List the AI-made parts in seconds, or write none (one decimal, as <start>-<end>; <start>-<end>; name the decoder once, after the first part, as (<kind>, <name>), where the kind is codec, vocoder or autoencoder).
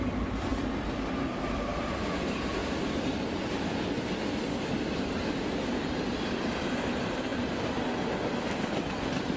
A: 0.0-9.4 (vocoder, BigVGAN v2)